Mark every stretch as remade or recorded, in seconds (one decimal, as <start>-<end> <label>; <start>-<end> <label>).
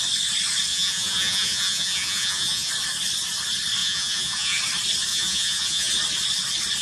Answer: 0.0-0.7 recorded; 0.7-2.7 remade; 2.7-3.8 recorded; 3.8-4.6 remade; 4.6-5.1 recorded; 5.1-5.9 remade; 5.9-6.8 recorded